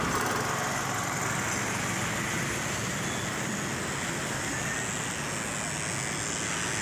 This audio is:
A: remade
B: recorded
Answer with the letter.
B